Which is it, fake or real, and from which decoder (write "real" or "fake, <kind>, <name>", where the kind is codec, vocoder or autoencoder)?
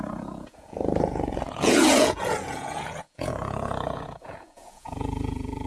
fake, vocoder, Vocos